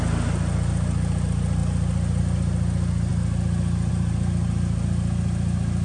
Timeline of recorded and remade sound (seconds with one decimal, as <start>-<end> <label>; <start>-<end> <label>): 0.0-5.8 recorded